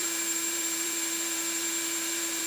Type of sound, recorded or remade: remade